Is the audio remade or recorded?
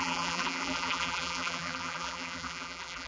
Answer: remade